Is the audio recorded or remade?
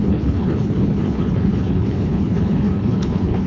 remade